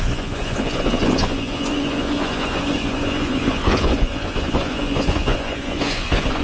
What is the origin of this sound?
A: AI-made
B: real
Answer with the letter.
A